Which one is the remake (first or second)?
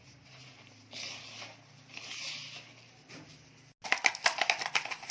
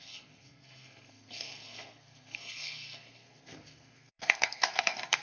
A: second